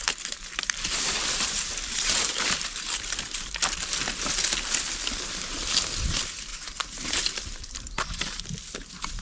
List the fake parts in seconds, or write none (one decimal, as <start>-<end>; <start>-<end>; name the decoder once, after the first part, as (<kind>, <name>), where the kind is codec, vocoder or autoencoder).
0.0-3.5 (vocoder, BigVGAN v2); 6.5-7.3